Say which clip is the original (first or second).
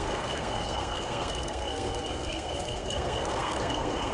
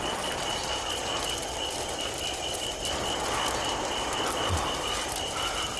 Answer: second